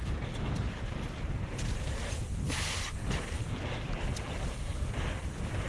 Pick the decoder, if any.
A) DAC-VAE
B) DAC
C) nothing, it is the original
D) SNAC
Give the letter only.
C